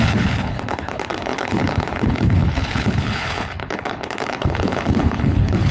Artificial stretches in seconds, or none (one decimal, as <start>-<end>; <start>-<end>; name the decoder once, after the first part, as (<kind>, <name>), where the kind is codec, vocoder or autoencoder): 0.0-5.7 (codec, HILCodec)